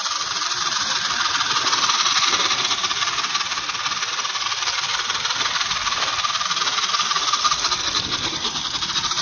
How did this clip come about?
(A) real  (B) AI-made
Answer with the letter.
B